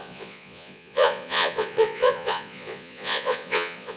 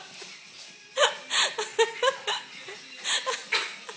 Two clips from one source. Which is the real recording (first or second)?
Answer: second